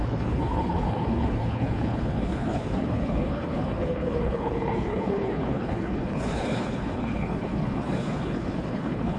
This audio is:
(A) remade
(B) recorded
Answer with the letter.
A